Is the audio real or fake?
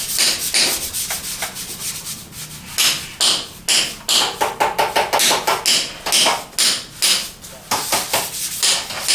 real